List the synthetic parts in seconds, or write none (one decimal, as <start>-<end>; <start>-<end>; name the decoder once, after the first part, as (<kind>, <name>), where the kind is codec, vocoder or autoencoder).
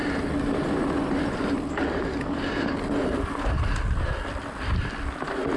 none